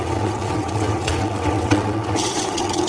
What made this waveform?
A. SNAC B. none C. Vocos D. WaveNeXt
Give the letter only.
D